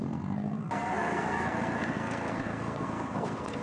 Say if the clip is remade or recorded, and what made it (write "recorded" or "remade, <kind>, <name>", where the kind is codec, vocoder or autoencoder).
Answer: remade, codec, SNAC